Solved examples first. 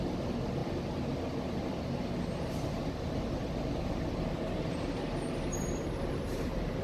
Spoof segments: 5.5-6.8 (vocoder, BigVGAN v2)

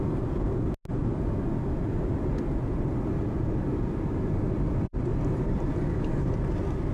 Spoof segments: 5.1-5.7 (vocoder, BigVGAN v2)

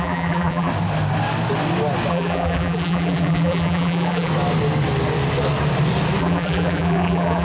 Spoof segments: 0.0-0.7 (vocoder, BigVGAN v2); 2.1-4.3; 6.2-7.4

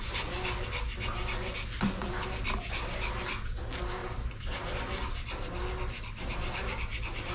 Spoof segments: 4.0-4.8 (vocoder, BigVGAN v2)

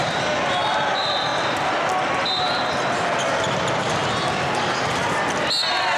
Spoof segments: none